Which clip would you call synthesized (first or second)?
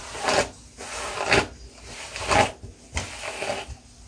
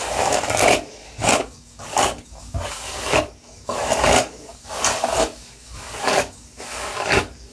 second